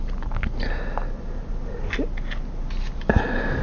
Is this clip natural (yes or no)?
yes